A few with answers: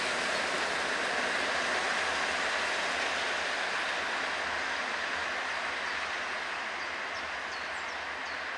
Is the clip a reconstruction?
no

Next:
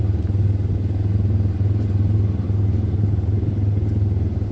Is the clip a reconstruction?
no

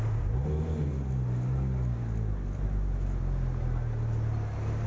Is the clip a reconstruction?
no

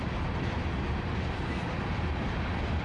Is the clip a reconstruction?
no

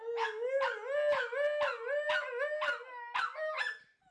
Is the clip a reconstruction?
no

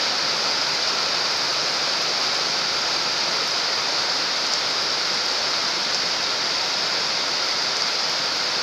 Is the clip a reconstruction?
no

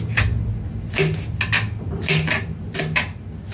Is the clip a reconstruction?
no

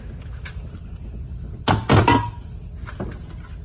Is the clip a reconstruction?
no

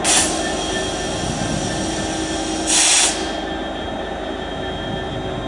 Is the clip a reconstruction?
no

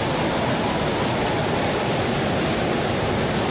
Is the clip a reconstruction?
no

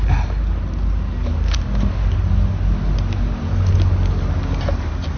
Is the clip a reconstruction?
no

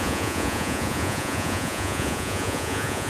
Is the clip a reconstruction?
yes